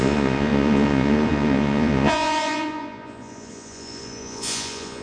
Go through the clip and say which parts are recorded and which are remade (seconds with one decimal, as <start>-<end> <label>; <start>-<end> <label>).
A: 0.0-5.0 remade